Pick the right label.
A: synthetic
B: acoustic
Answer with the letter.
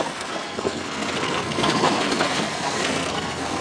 A